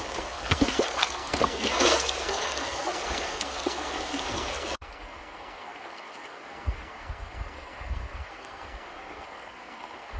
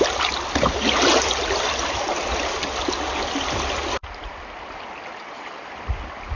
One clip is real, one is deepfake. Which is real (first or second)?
second